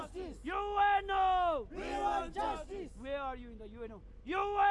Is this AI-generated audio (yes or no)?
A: no